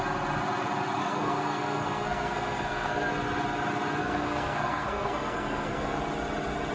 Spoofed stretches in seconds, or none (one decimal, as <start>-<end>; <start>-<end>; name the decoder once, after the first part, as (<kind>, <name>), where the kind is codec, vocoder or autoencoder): 1.0-3.1 (codec, SNAC); 4.0-6.0